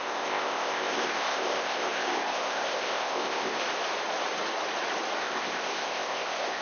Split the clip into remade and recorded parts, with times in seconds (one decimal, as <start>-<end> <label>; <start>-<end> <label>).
0.0-3.6 remade; 3.6-5.2 recorded; 5.2-6.6 remade